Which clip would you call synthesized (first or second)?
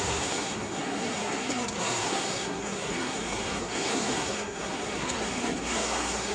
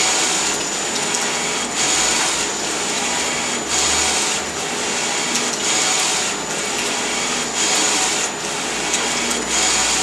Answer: first